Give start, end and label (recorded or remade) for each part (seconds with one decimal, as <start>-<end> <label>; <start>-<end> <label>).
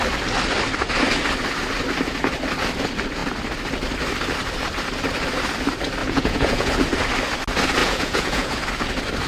0.0-6.0 recorded; 6.0-6.8 remade; 6.8-7.8 recorded; 7.8-8.6 remade; 8.6-9.3 recorded